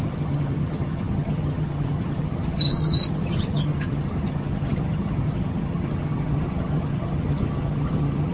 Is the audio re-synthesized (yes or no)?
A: yes